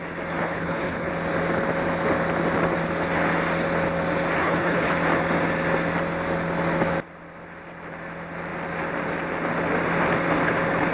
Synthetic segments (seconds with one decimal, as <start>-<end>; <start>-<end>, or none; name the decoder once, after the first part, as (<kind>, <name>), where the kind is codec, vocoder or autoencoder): 0.4-1.1 (codec, HILCodec); 4.4-4.9